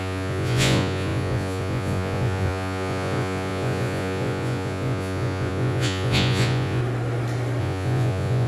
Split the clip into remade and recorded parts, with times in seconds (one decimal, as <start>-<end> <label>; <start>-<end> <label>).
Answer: 0.0-6.8 remade; 6.8-7.6 recorded; 7.6-8.5 remade